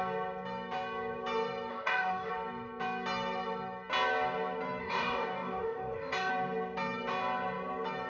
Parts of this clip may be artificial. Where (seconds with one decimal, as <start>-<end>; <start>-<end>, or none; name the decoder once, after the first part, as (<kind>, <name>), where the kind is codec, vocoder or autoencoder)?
1.7-2.3 (codec, DAC); 4.8-6.3